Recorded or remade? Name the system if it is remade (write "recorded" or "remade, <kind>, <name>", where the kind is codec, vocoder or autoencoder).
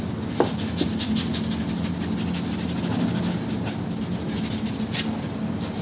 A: recorded